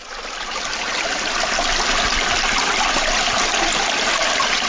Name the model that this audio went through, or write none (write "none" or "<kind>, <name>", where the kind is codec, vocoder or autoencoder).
none